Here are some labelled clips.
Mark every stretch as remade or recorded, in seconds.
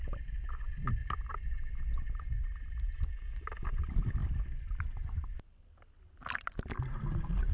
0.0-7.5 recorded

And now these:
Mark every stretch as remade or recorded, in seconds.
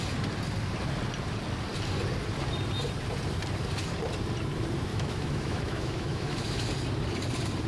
0.0-4.9 recorded; 4.9-6.7 remade; 6.7-7.7 recorded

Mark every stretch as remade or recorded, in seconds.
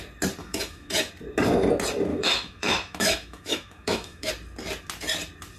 0.0-0.4 recorded; 0.4-1.1 remade; 1.1-2.1 recorded; 2.1-4.3 remade; 4.3-5.6 recorded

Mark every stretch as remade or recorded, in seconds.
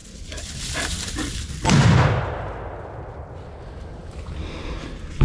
0.0-5.2 recorded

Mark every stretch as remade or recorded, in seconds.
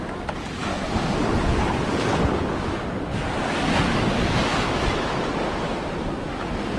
0.0-4.5 recorded; 4.5-5.1 remade; 5.1-6.8 recorded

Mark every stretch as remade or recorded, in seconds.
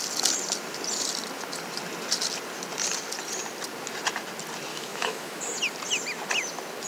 0.0-4.7 recorded; 4.7-5.4 remade; 5.4-6.9 recorded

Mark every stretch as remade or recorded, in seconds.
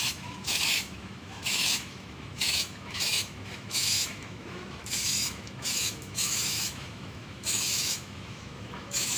0.0-9.2 remade